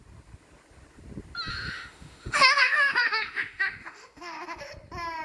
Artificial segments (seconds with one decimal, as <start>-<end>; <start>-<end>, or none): 1.5-4.6